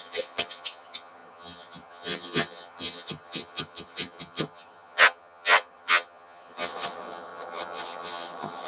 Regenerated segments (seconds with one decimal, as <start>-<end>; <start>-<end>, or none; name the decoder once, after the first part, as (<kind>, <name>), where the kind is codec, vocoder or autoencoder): 0.0-8.7 (vocoder, HiFi-GAN)